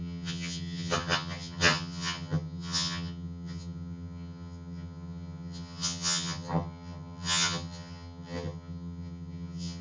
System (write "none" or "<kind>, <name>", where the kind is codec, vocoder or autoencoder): vocoder, HiFi-GAN